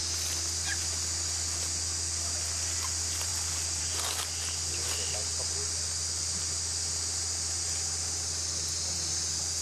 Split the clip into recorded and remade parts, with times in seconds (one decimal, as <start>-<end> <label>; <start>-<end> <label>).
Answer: 0.0-9.6 recorded